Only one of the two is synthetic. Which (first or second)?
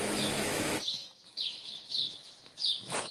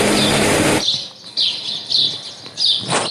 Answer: first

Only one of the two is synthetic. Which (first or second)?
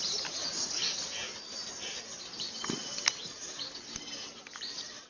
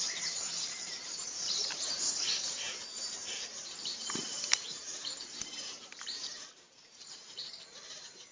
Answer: second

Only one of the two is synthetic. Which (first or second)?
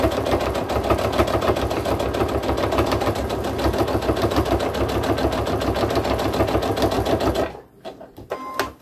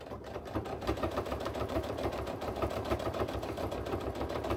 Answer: second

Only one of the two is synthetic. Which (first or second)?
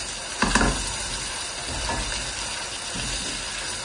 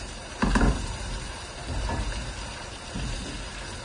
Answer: second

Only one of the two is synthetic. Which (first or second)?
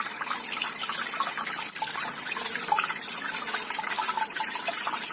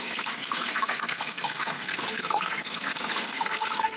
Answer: second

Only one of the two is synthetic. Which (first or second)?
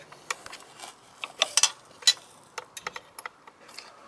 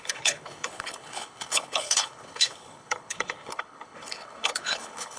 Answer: second